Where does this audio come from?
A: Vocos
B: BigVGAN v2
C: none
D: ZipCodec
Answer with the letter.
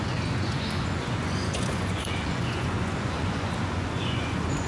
A